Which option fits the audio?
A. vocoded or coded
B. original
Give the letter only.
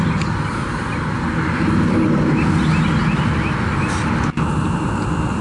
B